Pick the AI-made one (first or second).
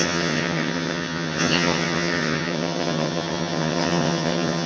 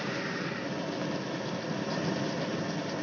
first